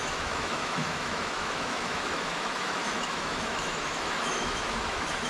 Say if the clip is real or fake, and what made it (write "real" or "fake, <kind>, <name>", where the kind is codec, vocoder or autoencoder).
fake, autoencoder, DAC-VAE